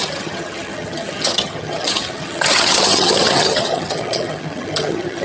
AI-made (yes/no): yes